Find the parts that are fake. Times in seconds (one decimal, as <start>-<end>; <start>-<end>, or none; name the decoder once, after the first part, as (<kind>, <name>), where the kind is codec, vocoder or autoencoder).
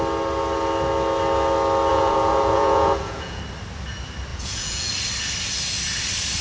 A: 1.9-3.4 (vocoder, Vocos); 4.3-4.9